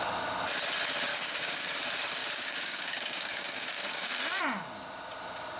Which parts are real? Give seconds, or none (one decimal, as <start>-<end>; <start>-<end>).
0.0-1.1; 1.8-2.2; 4.1-5.6